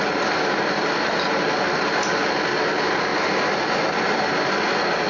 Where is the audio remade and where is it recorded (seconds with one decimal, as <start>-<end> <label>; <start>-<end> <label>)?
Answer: 0.0-5.1 recorded